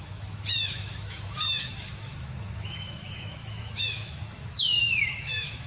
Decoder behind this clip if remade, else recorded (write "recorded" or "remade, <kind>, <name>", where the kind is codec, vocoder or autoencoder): remade, autoencoder, DAC-VAE